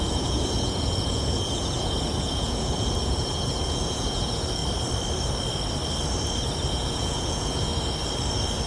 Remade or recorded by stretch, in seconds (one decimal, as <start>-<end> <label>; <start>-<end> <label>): 0.0-4.6 remade; 4.6-6.7 recorded; 6.7-7.7 remade; 7.7-8.7 recorded